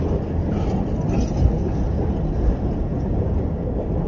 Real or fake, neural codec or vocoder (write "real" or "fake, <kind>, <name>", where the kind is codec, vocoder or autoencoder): real